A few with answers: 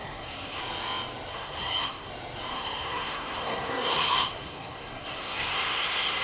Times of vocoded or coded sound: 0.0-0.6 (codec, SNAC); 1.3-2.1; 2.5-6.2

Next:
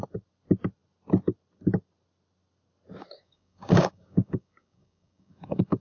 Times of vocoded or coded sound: 3.0-5.8 (codec, DAC)

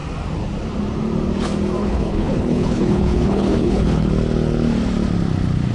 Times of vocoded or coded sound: 1.8-4.1 (codec, HILCodec)